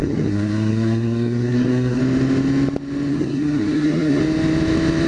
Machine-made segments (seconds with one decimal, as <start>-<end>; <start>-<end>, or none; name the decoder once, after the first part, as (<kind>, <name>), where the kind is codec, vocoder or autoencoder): 0.0-2.0 (codec, SNAC); 3.1-4.2